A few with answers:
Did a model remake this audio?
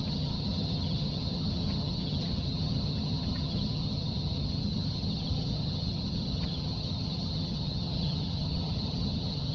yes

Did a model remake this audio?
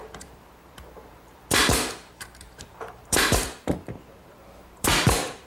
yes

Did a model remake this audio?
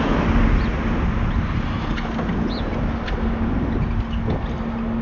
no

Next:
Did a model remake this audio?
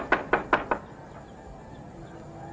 no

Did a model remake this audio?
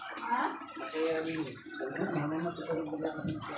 yes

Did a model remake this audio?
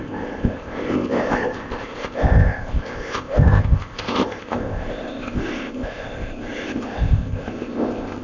yes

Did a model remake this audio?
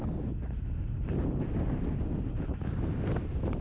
no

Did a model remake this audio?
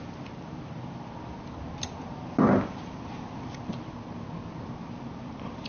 no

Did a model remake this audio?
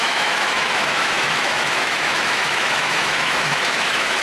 yes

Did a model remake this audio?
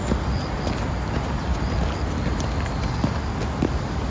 no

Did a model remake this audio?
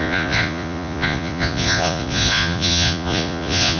yes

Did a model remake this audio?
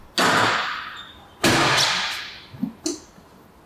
no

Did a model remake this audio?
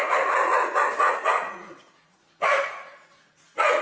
yes